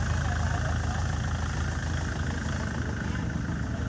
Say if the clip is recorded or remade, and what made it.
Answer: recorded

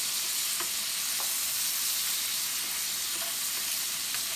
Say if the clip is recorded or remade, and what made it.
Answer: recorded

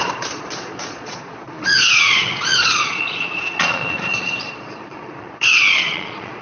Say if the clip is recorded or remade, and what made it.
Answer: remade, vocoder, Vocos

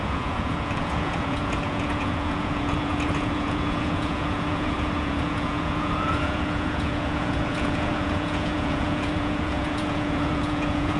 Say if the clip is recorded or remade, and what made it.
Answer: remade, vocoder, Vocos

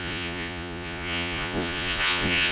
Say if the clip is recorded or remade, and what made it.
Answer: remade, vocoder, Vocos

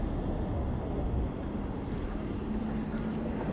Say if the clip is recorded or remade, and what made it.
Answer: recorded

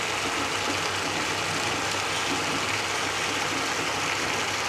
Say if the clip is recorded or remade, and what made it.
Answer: recorded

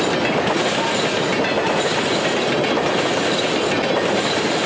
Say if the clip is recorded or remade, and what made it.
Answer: recorded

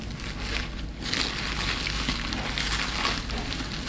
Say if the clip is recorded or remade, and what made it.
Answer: recorded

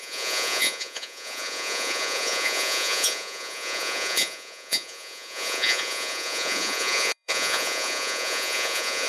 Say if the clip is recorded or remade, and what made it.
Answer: remade, vocoder, Vocos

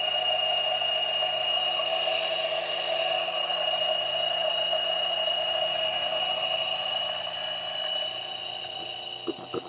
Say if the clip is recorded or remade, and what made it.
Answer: recorded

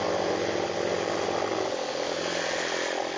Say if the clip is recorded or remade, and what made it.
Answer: recorded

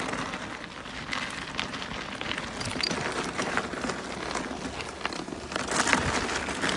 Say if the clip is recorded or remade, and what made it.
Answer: recorded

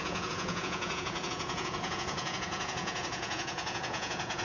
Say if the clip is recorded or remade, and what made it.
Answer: remade, vocoder, Vocos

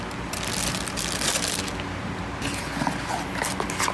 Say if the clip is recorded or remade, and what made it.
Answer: recorded